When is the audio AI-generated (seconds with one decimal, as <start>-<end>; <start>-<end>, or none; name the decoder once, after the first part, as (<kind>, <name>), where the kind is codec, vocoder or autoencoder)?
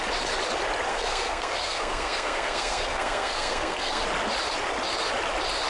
0.9-4.0 (codec, SNAC)